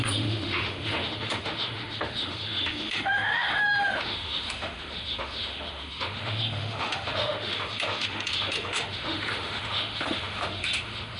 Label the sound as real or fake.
fake